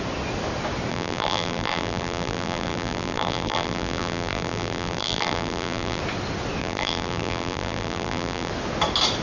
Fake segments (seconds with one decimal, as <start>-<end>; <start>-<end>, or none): 0.9-6.0; 6.6-8.5